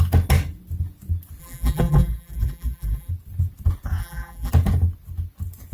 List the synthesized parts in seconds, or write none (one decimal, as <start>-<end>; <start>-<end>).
1.4-3.1; 4.0-4.5